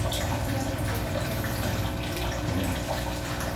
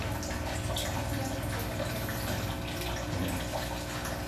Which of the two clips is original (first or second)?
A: second